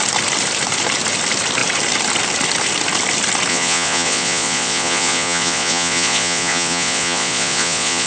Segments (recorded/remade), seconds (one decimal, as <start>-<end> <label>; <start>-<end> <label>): 0.0-3.5 recorded; 3.5-8.1 remade